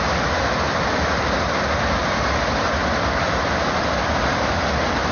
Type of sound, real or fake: real